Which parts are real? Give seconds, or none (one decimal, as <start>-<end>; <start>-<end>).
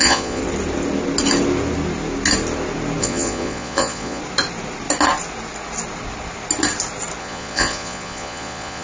0.4-3.0; 4.2-7.2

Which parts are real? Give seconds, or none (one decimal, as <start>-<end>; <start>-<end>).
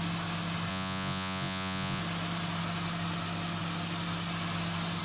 0.0-0.7; 2.0-5.0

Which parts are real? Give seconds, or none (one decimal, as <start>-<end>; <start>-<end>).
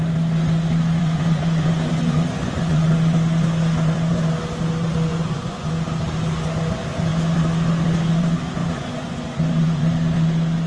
0.0-1.0; 2.9-5.1; 5.7-8.6; 9.9-10.7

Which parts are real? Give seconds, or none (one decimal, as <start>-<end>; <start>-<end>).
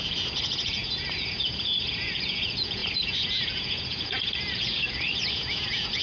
none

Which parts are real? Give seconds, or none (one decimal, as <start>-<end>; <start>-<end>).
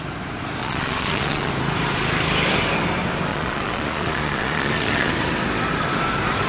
0.0-0.6; 1.5-3.3; 5.1-6.5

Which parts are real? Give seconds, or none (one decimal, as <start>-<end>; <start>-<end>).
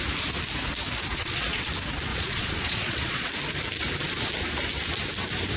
0.0-1.1; 1.7-2.1; 3.3-5.6